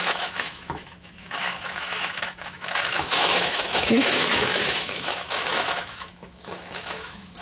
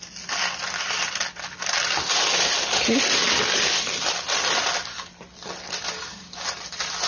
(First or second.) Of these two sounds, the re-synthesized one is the first